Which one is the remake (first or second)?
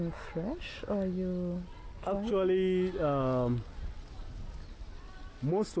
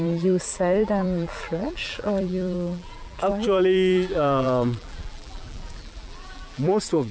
second